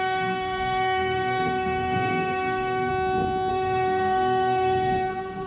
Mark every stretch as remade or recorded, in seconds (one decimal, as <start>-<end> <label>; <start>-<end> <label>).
0.0-2.9 remade; 2.9-3.5 recorded; 3.5-5.5 remade